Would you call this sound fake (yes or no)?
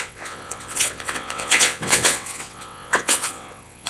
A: yes